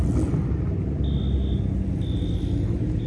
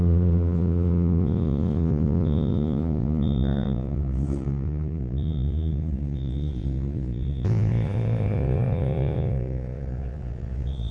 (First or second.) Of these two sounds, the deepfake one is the second